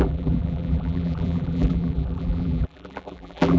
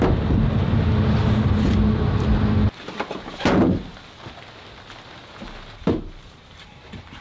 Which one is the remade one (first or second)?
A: first